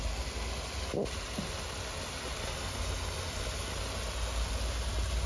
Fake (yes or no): no